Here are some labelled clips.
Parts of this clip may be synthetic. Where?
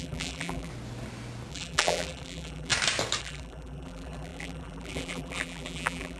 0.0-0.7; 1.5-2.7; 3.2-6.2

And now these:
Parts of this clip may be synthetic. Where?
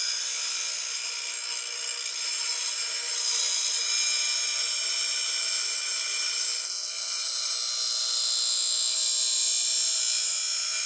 none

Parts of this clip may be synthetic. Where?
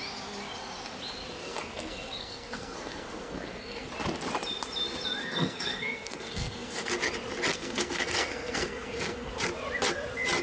1.4-3.9; 5.2-6.9; 7.5-9.3